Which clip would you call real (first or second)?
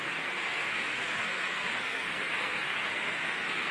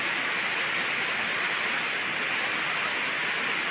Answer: second